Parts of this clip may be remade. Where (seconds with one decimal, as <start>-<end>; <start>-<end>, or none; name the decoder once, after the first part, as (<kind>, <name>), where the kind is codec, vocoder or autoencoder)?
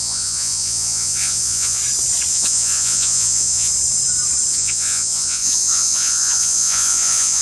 0.0-1.8 (vocoder, Vocos); 2.3-3.7; 4.5-7.4